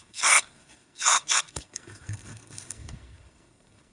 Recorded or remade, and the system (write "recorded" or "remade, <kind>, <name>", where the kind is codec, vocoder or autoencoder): remade, codec, SNAC